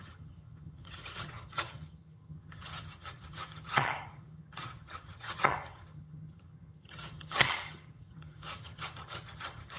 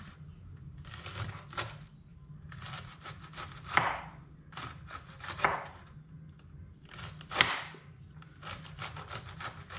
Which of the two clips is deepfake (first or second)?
first